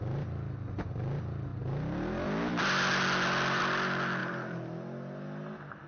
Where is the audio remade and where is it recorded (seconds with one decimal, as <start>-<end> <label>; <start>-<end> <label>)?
0.0-5.9 recorded